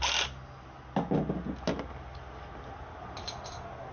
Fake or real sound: real